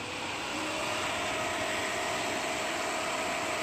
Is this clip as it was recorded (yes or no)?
yes